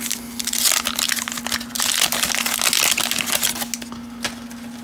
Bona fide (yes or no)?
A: yes